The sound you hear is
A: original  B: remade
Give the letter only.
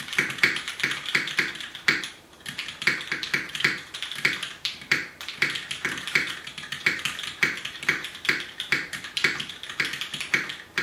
B